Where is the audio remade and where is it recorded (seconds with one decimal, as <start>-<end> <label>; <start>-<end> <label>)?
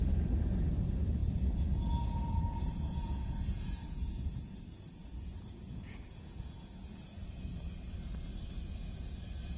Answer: 0.0-1.2 recorded; 1.2-4.6 remade; 4.6-5.0 recorded; 5.0-7.7 remade; 7.7-9.6 recorded